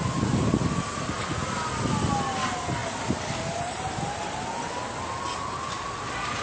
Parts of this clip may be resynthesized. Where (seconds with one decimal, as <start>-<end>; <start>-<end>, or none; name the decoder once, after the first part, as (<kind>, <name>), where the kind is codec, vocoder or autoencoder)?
none